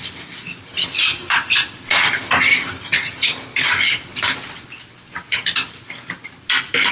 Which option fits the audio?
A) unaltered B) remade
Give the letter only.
A